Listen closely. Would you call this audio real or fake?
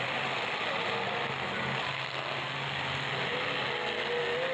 real